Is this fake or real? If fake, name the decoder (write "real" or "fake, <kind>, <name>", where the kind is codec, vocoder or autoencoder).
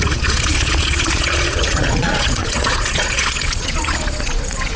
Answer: fake, vocoder, Vocos